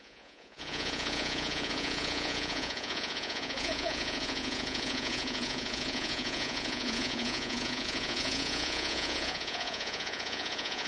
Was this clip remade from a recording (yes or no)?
yes